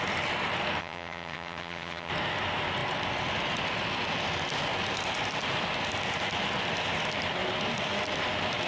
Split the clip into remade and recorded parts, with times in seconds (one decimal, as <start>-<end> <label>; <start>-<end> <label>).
0.0-0.8 recorded; 0.8-2.1 remade; 2.1-8.7 recorded